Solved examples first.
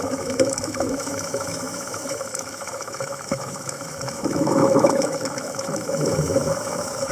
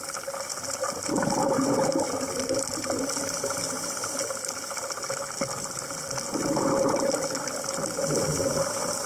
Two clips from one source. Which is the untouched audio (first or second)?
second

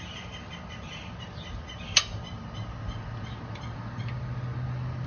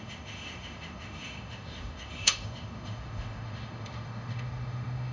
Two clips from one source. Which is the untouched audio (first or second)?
first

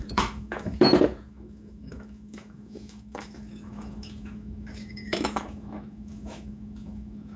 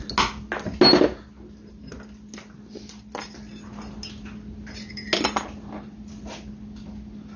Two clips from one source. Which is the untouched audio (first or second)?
second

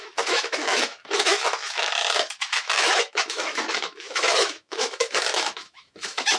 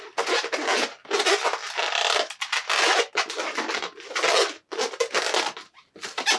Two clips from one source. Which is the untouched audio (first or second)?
second